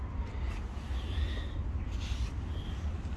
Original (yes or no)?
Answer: yes